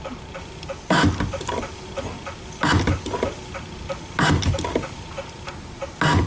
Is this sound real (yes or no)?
yes